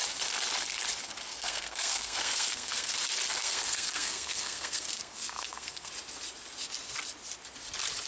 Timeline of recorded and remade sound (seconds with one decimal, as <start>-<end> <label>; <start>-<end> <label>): 0.0-1.3 recorded; 1.3-2.9 remade; 2.9-3.4 recorded; 3.4-5.9 remade; 5.9-8.1 recorded